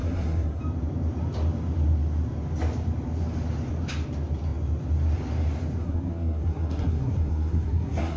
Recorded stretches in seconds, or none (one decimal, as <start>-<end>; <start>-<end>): 0.6-5.8